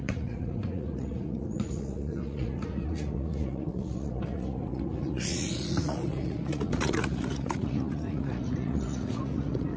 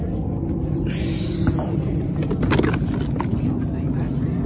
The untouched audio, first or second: second